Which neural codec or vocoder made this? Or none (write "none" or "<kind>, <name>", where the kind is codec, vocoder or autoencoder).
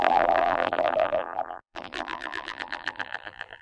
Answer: vocoder, BigVGAN v2